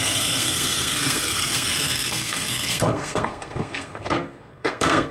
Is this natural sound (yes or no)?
no